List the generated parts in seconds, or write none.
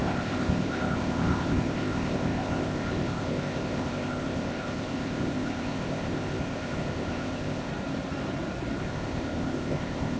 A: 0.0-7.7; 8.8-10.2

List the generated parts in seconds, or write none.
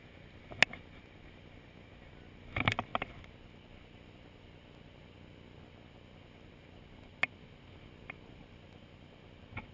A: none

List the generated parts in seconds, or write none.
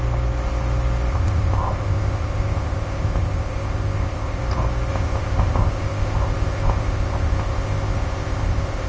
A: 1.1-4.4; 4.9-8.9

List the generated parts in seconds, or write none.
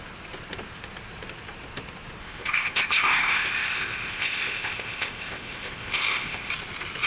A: 2.2-6.5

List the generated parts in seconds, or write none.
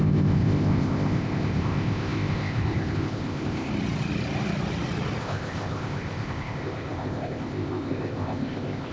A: 0.0-3.7; 5.2-8.9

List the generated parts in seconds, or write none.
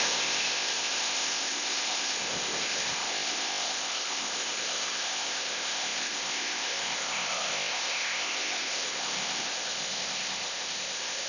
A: 0.0-11.3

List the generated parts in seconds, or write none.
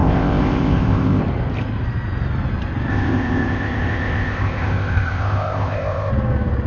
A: 0.0-1.2; 2.9-6.1